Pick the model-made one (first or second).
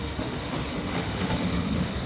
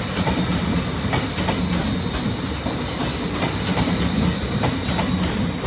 first